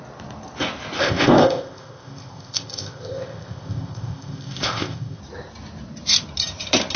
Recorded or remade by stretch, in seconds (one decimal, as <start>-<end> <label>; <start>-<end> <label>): 0.0-1.0 recorded; 1.0-5.2 remade; 5.2-7.0 recorded